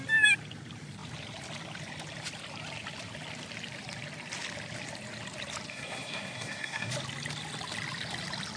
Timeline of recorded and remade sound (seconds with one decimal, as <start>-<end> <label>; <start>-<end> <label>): 0.0-5.7 recorded; 5.7-6.9 remade; 6.9-8.6 recorded